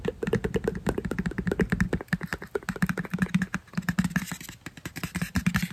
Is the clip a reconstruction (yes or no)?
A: no